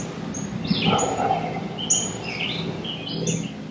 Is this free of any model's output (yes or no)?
yes